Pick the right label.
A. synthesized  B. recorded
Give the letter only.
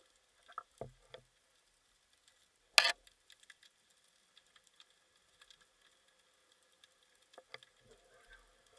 B